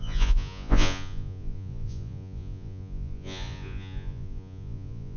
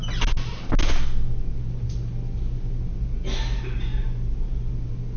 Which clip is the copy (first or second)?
first